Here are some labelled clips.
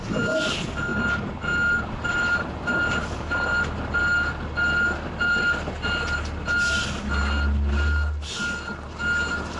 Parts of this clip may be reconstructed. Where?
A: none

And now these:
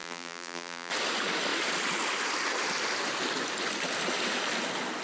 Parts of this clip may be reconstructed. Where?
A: 0.0-0.9 (vocoder, BigVGAN v2)

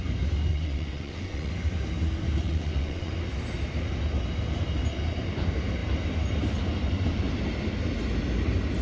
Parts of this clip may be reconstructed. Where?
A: 0.5-1.5 (vocoder, WaveNeXt); 2.4-3.1